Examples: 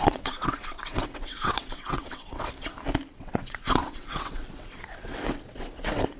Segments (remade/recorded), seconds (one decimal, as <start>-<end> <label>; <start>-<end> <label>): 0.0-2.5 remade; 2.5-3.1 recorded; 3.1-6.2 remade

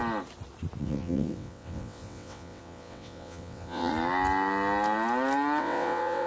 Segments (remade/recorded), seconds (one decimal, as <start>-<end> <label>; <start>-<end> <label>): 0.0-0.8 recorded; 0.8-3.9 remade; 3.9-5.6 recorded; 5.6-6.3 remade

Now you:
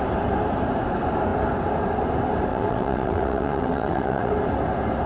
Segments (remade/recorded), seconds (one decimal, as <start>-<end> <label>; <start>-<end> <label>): 0.0-2.5 recorded; 2.5-4.3 remade; 4.3-5.1 recorded